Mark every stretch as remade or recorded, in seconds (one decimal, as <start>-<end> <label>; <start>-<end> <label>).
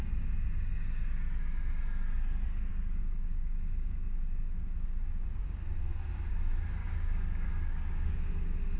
0.0-2.7 recorded; 2.7-5.6 remade; 5.6-6.8 recorded; 6.8-8.2 remade; 8.2-8.8 recorded